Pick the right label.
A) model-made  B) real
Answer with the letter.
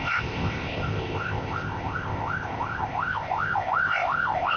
A